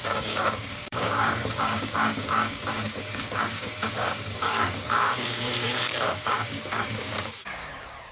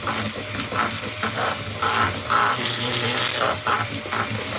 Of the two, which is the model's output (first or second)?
first